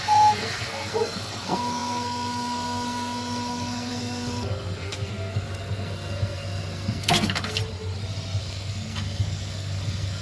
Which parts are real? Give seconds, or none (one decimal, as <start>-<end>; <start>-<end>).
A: 7.6-8.4